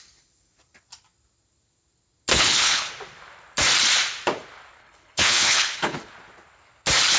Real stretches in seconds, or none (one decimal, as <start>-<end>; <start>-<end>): 0.0-2.3; 2.9-4.8; 6.1-7.2